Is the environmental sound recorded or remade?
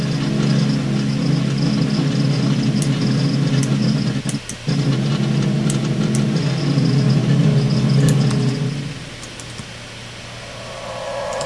recorded